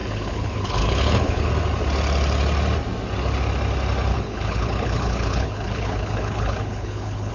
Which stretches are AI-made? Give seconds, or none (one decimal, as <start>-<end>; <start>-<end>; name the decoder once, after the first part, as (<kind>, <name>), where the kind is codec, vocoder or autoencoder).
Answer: 0.0-1.5 (codec, HILCodec); 4.1-7.3